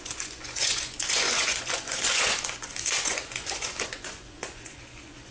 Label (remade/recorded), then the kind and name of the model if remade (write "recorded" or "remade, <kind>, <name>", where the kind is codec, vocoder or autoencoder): remade, vocoder, Vocos